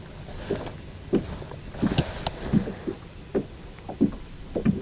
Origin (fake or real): real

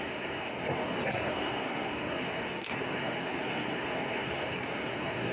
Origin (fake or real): fake